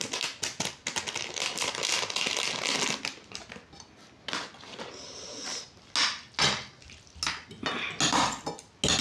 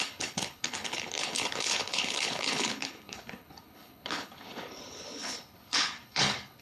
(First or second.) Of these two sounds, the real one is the first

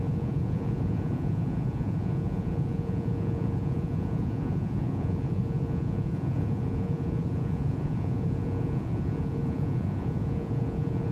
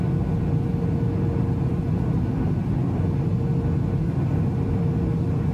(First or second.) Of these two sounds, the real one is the second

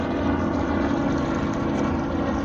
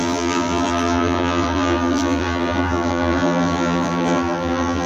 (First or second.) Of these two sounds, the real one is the first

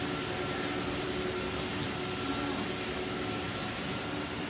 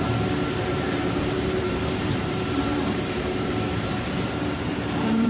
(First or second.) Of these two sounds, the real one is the first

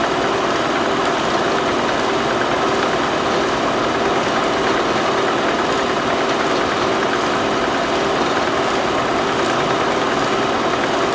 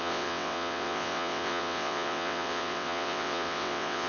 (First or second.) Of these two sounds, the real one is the first